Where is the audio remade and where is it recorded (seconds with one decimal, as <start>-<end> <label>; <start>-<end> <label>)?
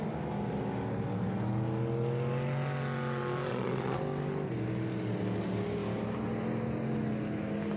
0.0-3.5 recorded; 3.5-4.0 remade; 4.0-7.8 recorded